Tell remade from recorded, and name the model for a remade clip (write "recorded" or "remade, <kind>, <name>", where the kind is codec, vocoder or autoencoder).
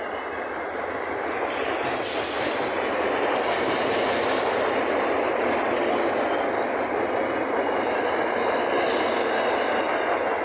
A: recorded